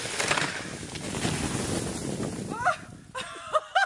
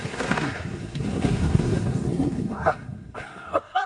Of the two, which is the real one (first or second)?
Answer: first